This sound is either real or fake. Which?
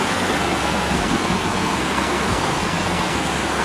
fake